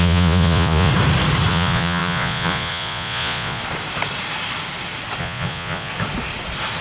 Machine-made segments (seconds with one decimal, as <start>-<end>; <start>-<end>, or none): 0.0-0.9; 1.5-3.6; 5.2-5.9